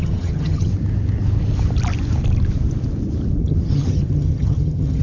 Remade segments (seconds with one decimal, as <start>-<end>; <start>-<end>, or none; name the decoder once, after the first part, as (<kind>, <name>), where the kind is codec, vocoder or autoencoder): 0.0-0.7 (vocoder, HiFi-GAN); 3.4-5.0